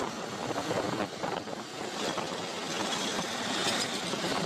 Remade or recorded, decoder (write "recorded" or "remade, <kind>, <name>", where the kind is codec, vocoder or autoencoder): recorded